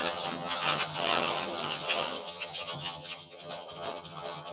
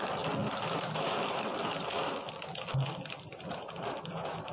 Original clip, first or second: second